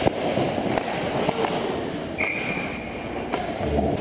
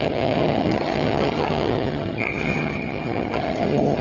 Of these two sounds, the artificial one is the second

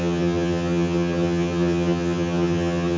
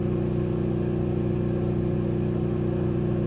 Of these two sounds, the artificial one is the first